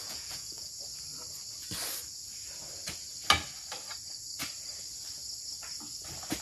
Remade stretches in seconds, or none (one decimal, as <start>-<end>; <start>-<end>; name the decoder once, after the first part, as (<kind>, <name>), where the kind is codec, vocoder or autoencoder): 0.0-0.7 (vocoder, Vocos)